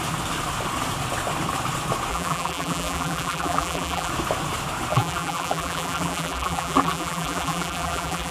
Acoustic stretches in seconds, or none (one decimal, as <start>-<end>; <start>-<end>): 0.0-2.1; 4.1-4.9